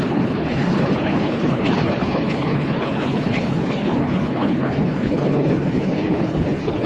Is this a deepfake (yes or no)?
yes